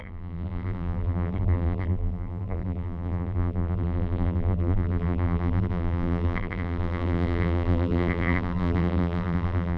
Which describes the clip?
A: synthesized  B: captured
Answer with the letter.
A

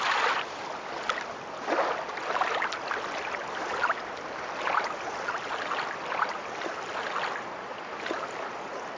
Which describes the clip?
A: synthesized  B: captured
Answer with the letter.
B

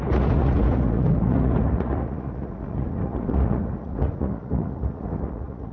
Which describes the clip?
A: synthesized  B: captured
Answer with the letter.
A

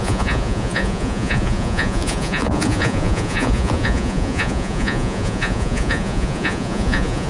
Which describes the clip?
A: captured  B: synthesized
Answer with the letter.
B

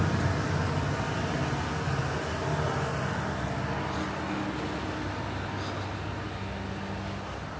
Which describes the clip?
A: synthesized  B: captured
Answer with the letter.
B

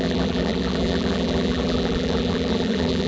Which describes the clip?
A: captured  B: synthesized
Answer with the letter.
B